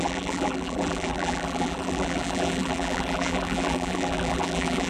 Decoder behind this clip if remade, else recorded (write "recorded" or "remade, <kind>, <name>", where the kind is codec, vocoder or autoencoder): remade, vocoder, BigVGAN v2